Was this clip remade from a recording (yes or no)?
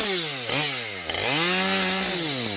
no